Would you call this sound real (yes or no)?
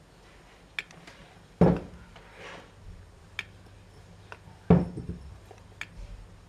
yes